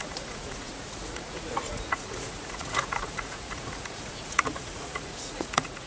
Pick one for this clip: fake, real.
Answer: fake